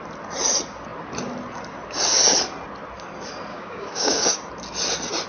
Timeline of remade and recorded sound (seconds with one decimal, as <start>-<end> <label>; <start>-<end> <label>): 0.0-3.5 recorded; 3.5-4.3 remade; 4.3-5.3 recorded